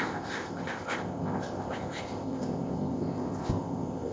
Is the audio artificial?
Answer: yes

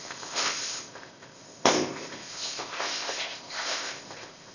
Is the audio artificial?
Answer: yes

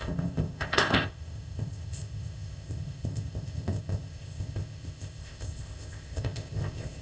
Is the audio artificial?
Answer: yes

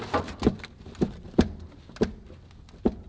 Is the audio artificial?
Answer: no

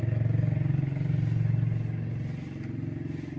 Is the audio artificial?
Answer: no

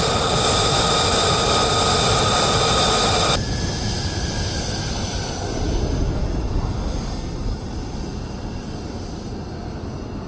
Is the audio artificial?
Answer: no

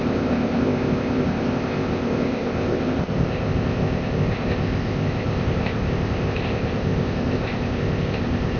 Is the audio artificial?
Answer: yes